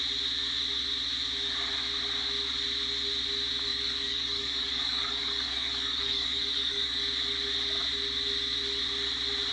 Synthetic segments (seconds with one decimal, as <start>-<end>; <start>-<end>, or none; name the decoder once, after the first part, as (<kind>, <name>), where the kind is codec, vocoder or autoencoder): 3.7-7.0 (codec, DAC)